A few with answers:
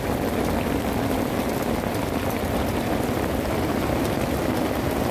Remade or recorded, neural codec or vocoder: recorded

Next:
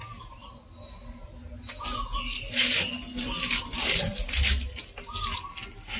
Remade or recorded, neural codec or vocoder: recorded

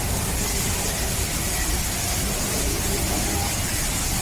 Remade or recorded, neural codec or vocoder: recorded